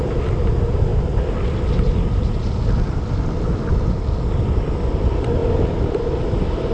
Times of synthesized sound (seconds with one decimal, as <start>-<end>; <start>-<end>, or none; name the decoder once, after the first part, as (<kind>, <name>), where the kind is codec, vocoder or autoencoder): 0.9-4.7 (vocoder, BigVGAN v2)